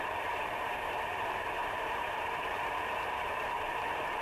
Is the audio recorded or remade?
remade